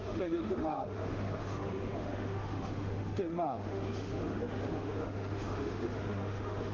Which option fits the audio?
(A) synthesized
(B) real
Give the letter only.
A